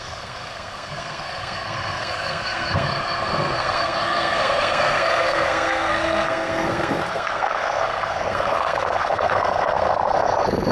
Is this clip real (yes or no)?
no